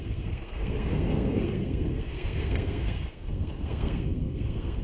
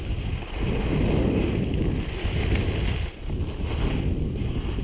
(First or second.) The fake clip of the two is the first